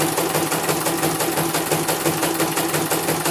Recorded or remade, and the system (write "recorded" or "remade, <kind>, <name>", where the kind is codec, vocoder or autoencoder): recorded